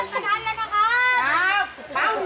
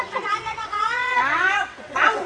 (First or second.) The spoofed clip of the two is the second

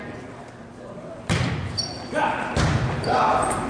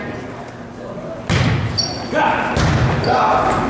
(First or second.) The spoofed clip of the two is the first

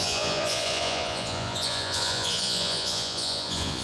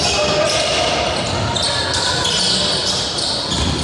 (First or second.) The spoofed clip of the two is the first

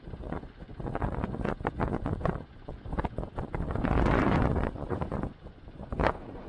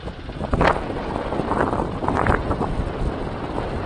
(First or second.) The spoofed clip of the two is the first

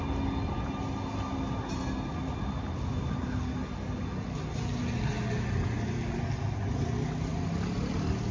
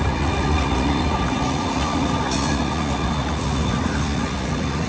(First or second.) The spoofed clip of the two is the second